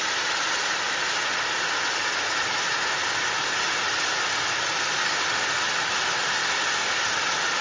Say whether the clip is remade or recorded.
recorded